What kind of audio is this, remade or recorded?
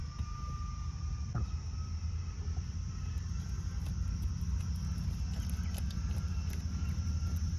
recorded